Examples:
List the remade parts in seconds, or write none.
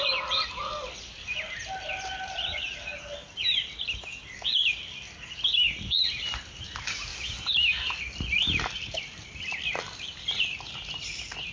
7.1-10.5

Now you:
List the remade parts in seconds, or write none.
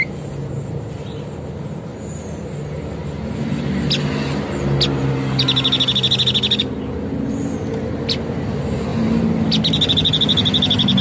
none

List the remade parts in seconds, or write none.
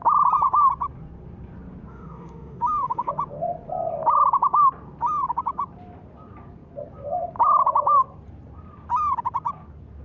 1.9-3.1